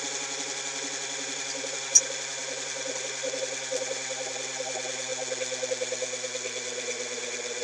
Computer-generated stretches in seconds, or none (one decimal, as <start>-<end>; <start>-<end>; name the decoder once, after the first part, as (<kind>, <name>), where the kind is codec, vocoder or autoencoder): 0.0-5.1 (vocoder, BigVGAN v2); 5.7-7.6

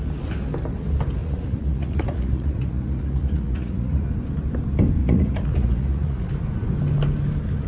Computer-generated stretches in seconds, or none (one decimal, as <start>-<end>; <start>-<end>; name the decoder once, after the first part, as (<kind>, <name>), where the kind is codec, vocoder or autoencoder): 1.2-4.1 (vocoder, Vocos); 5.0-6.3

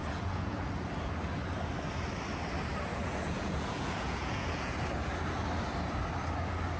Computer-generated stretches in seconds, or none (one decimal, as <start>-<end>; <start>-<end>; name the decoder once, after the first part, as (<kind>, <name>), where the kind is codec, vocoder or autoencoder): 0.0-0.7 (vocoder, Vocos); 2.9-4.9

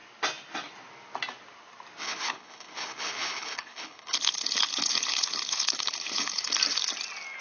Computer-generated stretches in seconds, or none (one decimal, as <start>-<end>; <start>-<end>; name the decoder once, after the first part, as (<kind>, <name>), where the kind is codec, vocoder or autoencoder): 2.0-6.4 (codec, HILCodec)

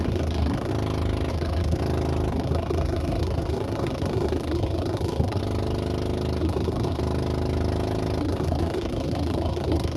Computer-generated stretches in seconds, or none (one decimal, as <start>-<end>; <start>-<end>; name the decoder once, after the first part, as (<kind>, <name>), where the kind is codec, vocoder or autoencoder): 0.0-0.7 (codec, SNAC); 1.3-1.8; 2.3-5.4; 6.4-7.0; 8.2-10.0